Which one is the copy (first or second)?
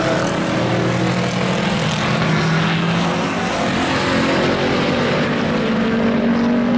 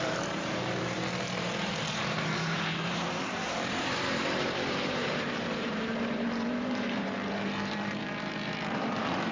second